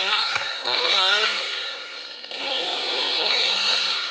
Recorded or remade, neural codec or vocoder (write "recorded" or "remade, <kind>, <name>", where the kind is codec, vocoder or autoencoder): remade, codec, SNAC